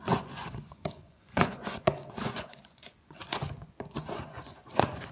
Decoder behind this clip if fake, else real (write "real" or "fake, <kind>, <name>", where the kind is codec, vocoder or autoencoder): fake, vocoder, Vocos